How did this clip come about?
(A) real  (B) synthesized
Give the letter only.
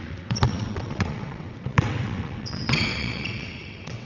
B